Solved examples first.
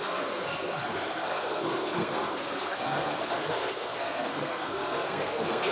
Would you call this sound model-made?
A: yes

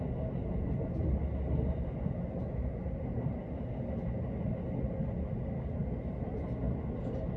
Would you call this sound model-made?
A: no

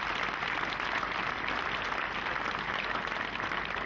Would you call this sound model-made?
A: no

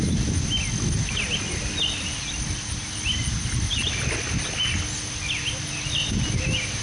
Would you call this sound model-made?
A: no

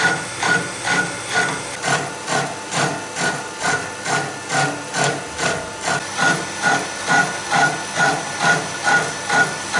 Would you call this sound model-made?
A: no